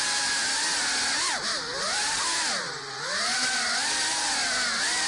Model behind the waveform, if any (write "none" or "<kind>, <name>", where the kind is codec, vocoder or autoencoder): none